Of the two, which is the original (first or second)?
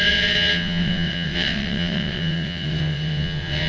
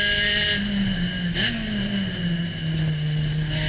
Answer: second